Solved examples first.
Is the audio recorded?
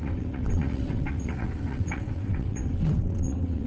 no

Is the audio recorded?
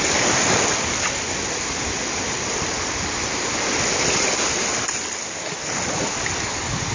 yes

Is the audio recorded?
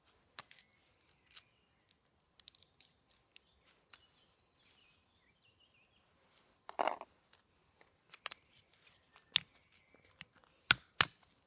yes